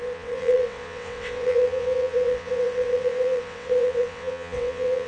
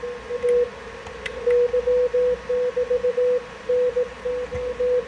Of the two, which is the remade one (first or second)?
first